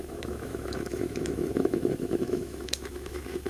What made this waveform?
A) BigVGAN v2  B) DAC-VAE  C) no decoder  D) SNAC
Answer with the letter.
B